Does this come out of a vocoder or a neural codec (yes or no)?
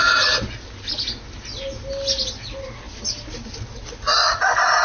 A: no